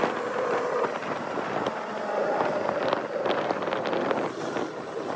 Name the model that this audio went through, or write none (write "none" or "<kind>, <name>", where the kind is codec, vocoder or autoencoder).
none